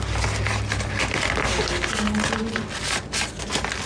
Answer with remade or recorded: recorded